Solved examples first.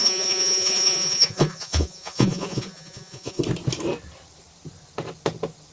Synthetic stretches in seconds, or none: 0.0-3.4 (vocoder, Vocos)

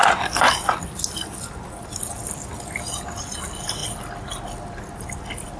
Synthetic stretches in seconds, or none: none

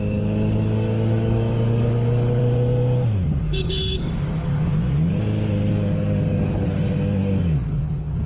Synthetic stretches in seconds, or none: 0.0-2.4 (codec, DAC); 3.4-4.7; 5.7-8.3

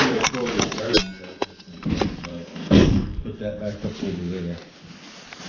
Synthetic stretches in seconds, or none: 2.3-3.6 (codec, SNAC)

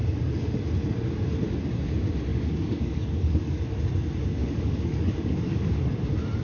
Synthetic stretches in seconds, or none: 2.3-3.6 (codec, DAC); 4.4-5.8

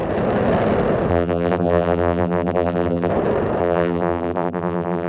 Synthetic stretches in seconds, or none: 1.1-3.1 (vocoder, BigVGAN v2); 3.6-5.1